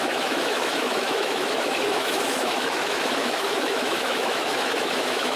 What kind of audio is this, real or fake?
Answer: fake